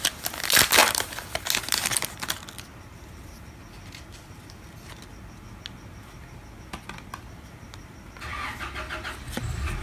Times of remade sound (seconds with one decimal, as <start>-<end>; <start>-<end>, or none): none